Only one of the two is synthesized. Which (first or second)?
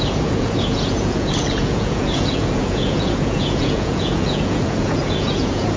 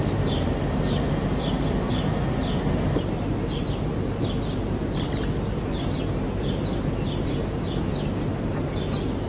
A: first